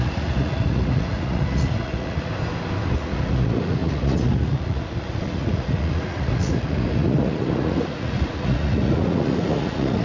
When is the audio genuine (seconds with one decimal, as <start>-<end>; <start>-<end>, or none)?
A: 2.3-2.9